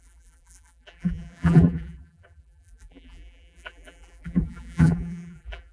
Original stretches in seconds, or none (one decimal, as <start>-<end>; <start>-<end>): none